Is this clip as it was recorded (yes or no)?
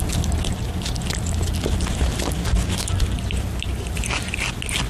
yes